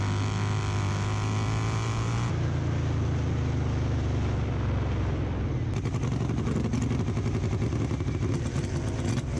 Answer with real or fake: real